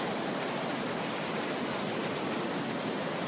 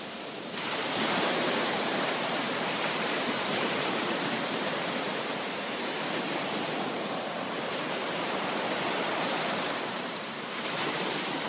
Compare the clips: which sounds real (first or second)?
first